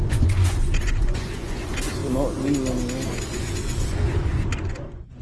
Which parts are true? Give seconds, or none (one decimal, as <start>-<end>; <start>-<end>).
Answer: 2.0-3.2